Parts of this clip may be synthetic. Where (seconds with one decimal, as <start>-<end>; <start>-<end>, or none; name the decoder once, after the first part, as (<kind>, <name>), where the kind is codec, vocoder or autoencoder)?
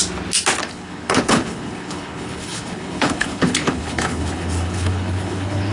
0.6-5.7 (codec, HILCodec)